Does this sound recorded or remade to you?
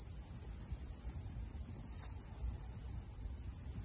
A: recorded